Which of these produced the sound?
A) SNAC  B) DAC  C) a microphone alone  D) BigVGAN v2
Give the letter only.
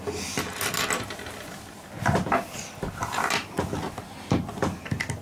C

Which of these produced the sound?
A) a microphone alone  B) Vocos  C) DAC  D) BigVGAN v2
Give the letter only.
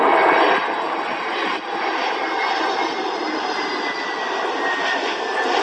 A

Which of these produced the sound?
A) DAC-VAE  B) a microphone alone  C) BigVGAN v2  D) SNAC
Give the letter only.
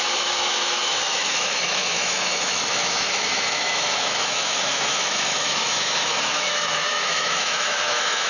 A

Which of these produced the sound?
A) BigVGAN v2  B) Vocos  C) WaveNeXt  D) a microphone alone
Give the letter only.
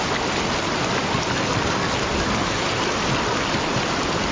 D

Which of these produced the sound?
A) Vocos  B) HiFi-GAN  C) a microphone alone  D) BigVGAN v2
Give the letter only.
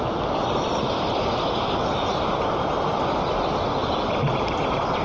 C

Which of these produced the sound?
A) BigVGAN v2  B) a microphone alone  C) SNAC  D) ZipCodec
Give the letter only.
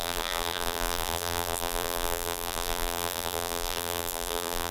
A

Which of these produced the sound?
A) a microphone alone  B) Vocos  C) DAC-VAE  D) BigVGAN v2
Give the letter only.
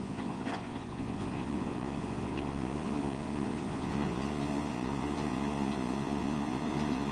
B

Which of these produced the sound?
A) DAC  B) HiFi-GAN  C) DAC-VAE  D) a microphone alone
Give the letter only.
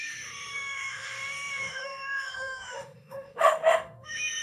C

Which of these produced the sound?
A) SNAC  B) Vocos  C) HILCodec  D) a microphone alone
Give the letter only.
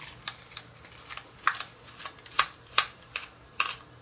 D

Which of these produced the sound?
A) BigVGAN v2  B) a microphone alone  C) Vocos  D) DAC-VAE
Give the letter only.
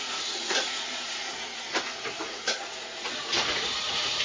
C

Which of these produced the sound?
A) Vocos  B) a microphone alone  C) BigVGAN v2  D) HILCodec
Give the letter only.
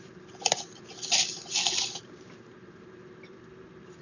C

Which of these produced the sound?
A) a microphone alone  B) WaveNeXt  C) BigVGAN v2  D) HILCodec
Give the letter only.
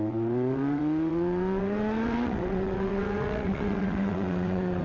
B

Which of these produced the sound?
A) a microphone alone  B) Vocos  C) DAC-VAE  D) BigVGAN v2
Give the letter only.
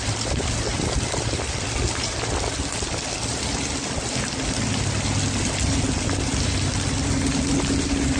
A